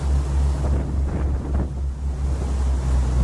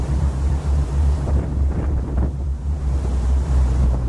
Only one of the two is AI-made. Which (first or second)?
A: second